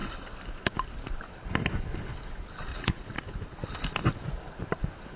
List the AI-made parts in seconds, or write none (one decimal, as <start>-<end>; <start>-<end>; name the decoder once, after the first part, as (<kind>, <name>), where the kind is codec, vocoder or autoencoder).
2.7-3.2 (vocoder, Vocos)